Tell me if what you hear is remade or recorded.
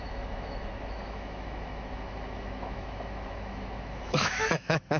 remade